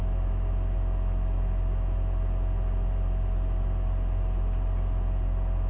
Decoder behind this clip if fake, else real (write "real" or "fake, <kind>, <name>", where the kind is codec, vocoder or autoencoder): real